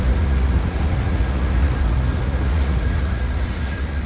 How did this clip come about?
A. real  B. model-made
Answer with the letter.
B